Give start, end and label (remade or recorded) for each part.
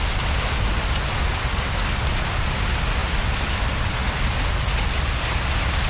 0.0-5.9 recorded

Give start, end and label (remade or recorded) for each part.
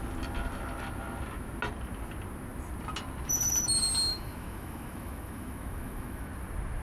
0.0-4.1 recorded; 4.1-6.3 remade; 6.3-6.8 recorded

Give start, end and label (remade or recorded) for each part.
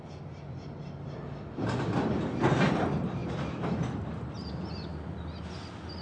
0.0-3.2 recorded; 3.2-4.5 remade; 4.5-6.0 recorded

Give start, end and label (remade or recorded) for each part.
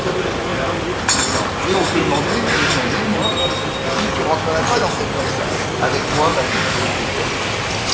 0.0-6.3 recorded; 6.3-7.0 remade; 7.0-7.9 recorded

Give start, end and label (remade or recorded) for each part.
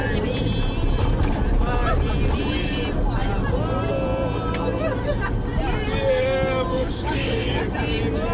0.0-6.7 recorded; 6.7-7.6 remade; 7.6-8.3 recorded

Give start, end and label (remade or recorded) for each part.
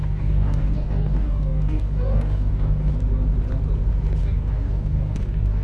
0.0-2.9 remade; 2.9-4.2 recorded; 4.2-5.6 remade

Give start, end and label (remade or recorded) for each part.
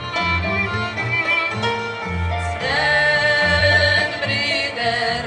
0.0-3.6 recorded; 3.6-4.2 remade; 4.2-5.3 recorded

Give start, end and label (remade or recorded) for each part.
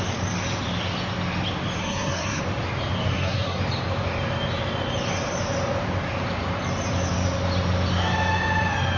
0.0-1.8 recorded; 1.8-2.4 remade; 2.4-3.1 recorded; 3.1-3.6 remade; 3.6-9.0 recorded